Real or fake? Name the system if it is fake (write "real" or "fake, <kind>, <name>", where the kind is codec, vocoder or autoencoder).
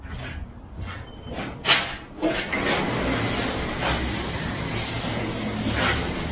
real